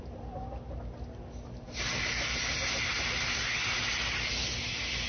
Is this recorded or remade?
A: recorded